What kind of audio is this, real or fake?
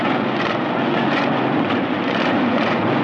fake